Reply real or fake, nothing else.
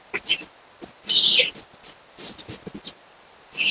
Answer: real